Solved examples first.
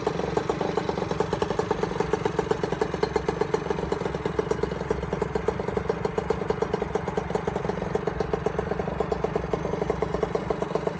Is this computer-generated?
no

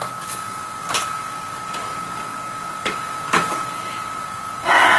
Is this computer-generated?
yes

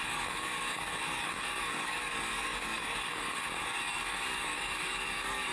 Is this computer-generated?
yes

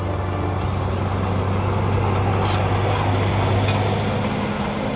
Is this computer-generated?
no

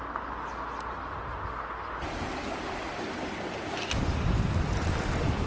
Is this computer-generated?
no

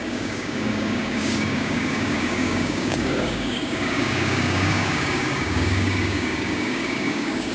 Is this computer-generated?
yes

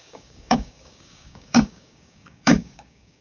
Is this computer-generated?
yes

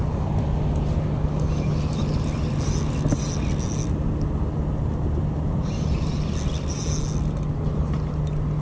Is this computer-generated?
no